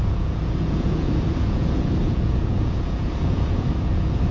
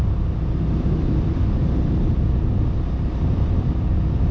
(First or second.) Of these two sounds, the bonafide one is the second